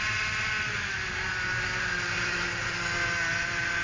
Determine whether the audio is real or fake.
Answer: real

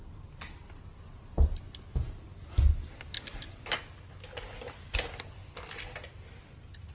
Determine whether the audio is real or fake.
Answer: real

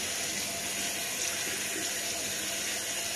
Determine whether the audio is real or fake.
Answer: real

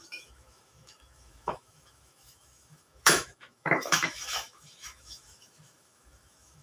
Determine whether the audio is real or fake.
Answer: fake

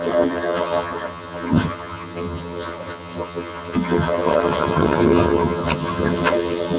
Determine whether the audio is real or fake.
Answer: fake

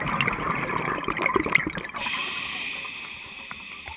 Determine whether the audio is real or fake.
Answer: real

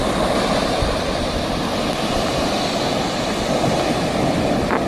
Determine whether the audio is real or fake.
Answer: real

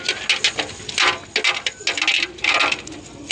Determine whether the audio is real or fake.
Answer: real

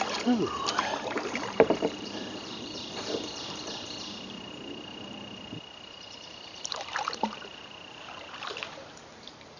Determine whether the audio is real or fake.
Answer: fake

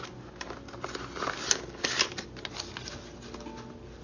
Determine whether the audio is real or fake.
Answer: real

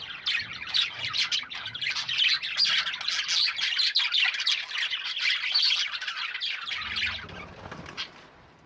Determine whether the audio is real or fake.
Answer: real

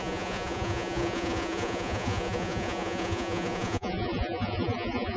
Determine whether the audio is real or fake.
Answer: fake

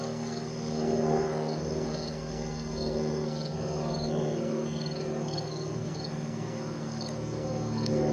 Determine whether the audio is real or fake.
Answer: fake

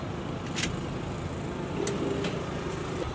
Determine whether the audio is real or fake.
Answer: real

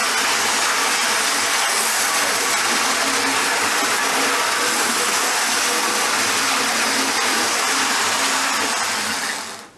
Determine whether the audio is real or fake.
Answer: real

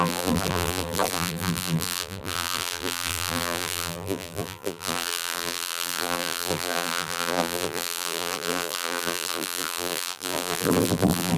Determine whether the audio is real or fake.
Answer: fake